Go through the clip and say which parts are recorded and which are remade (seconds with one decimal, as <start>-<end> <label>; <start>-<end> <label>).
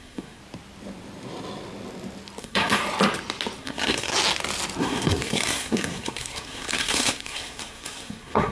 0.0-0.4 remade; 0.4-2.4 recorded; 2.4-2.8 remade; 2.8-3.6 recorded; 3.6-4.1 remade; 4.1-4.8 recorded; 4.8-8.5 remade